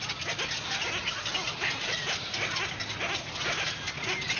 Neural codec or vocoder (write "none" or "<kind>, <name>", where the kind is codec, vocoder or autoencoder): none